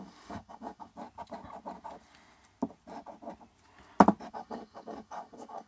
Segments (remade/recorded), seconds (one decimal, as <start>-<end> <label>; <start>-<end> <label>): 0.0-0.9 remade; 0.9-4.3 recorded; 4.3-5.7 remade

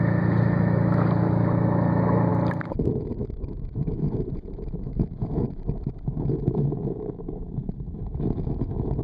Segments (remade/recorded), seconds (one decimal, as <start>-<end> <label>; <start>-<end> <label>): 0.0-2.3 remade; 2.3-2.9 recorded; 2.9-9.0 remade

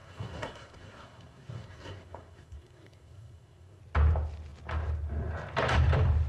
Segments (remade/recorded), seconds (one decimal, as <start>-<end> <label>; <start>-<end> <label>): 0.0-3.8 remade; 3.8-6.3 recorded

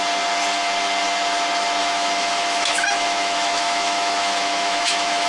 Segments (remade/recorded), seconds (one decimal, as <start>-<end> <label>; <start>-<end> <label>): 0.0-1.8 recorded; 1.8-5.3 remade

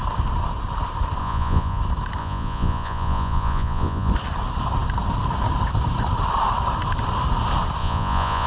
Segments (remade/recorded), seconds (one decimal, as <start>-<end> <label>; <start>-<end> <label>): 0.0-1.2 recorded; 1.2-1.8 remade; 1.8-2.2 recorded; 2.2-4.1 remade; 4.1-7.8 recorded; 7.8-8.5 remade